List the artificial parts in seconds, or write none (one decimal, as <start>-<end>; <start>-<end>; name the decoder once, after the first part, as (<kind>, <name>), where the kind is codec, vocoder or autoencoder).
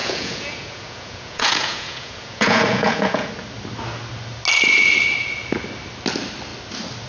0.0-3.3 (vocoder, Vocos)